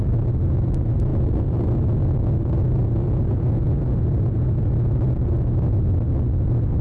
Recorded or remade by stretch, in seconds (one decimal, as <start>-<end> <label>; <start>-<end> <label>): 0.0-6.8 recorded